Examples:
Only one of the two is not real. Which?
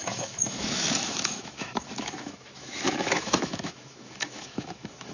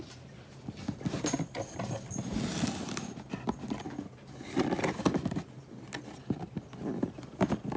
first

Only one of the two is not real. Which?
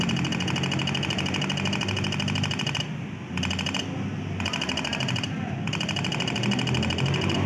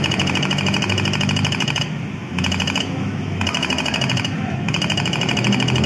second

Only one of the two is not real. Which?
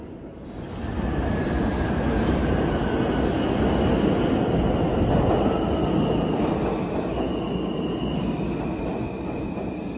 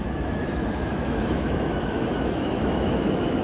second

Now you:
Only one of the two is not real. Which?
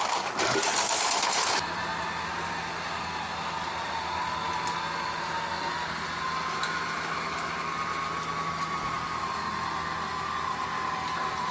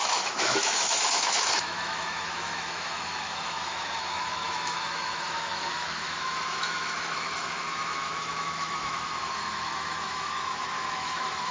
second